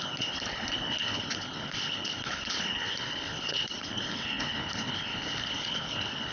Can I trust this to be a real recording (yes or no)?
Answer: no